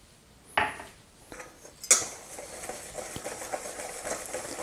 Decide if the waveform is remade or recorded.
recorded